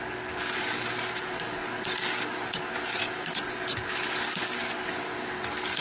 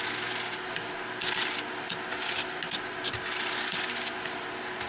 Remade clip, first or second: first